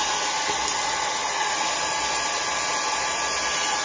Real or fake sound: real